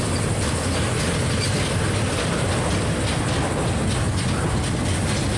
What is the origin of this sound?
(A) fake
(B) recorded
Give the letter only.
B